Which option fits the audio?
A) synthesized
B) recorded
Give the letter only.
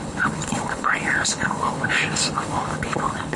A